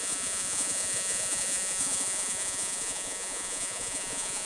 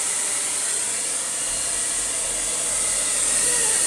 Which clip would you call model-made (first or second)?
first